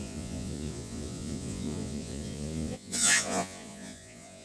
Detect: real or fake fake